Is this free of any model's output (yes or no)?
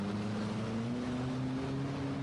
yes